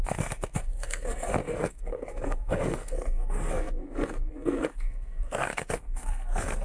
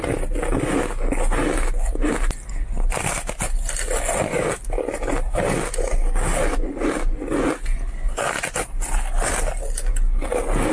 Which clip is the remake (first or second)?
first